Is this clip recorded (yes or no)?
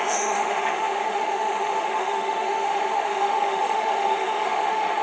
no